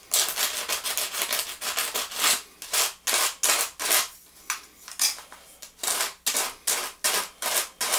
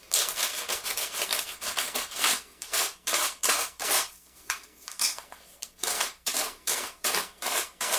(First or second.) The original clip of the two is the first